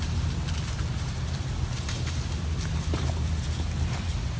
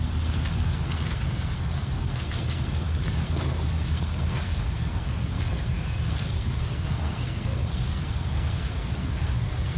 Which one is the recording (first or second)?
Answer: first